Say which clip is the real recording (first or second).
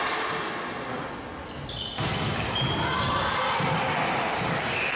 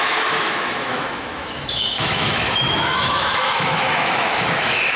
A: first